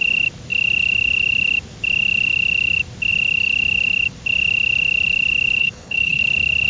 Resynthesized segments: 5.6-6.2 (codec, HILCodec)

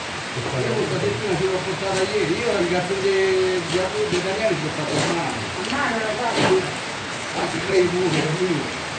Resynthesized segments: 6.9-7.8 (codec, HILCodec)

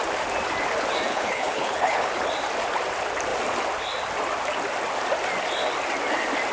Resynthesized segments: 1.1-2.3 (codec, HILCodec)